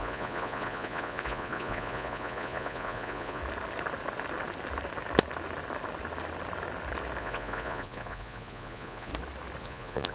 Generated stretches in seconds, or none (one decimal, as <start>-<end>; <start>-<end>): 0.0-3.4; 7.2-9.1; 9.6-10.1